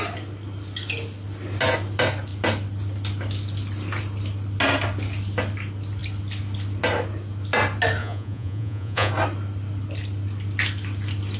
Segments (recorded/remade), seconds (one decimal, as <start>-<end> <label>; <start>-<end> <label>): 0.0-8.0 recorded; 8.0-9.1 remade; 9.1-11.4 recorded